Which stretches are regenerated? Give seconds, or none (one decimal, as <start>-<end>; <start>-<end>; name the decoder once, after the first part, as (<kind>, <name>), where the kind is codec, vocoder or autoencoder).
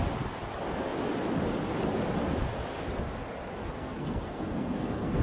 3.6-5.2 (codec, SNAC)